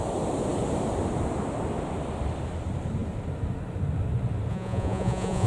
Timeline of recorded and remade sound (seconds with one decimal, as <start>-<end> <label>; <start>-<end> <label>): 0.0-4.5 recorded; 4.5-5.5 remade